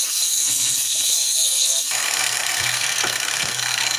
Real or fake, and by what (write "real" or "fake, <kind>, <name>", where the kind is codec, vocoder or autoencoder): fake, codec, SNAC